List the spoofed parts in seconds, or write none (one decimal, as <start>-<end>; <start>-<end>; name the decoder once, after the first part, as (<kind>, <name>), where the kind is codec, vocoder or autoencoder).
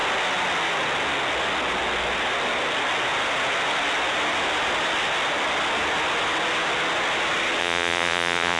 7.6-8.6 (vocoder, Vocos)